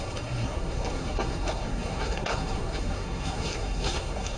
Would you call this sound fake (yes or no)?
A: yes